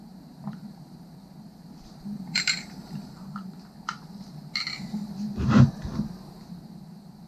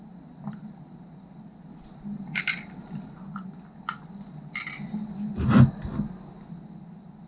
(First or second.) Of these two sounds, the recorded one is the second